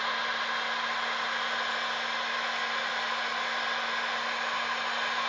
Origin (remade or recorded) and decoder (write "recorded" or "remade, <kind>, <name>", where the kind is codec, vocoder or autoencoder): recorded